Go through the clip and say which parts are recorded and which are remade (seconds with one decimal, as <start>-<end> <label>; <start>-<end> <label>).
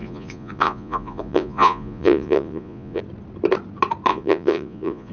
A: 0.0-3.0 remade; 3.0-4.1 recorded; 4.1-5.1 remade